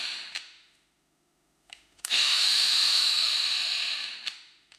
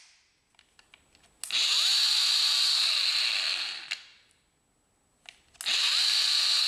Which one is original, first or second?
second